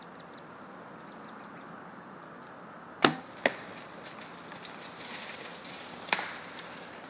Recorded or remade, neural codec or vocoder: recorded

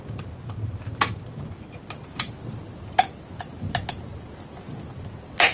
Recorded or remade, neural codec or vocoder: recorded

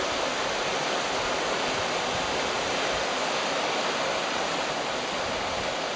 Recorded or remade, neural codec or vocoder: recorded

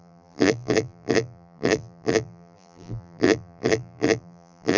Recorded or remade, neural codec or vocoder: remade, vocoder, BigVGAN v2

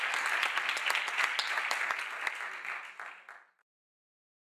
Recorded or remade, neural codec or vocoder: recorded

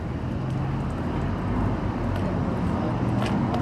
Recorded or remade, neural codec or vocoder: recorded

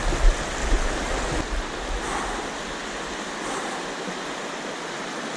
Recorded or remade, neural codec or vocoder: recorded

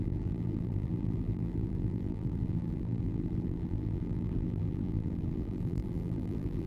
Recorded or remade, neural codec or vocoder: remade, vocoder, BigVGAN v2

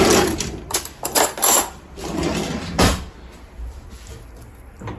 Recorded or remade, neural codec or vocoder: remade, vocoder, BigVGAN v2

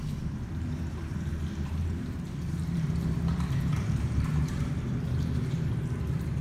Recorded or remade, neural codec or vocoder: remade, vocoder, BigVGAN v2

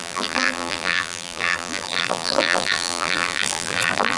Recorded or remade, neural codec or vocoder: remade, vocoder, BigVGAN v2